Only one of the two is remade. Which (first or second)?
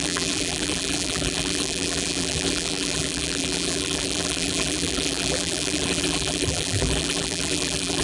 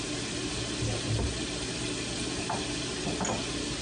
first